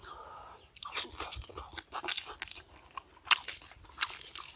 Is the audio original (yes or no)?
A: yes